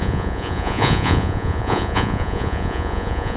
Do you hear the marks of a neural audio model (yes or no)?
yes